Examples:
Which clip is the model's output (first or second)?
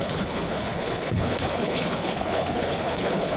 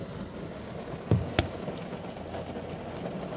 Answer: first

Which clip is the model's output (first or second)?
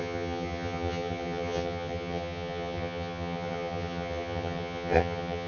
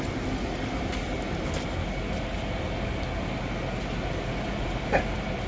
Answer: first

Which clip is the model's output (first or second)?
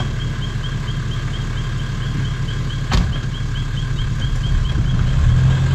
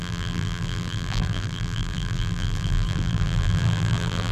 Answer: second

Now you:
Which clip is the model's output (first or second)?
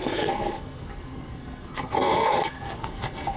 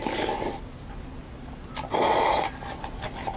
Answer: first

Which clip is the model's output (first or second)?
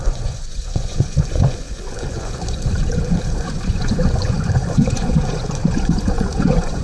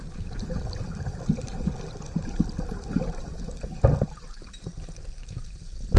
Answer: first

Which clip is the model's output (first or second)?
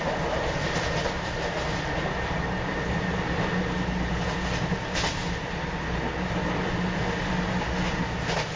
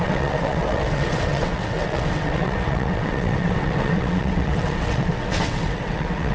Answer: second